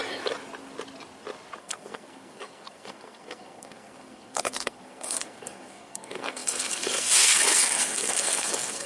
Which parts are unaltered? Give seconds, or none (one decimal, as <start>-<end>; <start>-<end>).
0.0-1.6